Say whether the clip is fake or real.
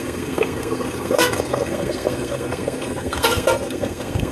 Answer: fake